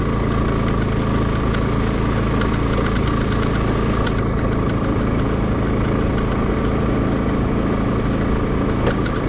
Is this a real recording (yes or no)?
yes